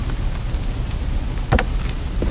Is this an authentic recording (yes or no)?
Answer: yes